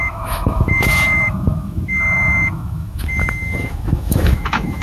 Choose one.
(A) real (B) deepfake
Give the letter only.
B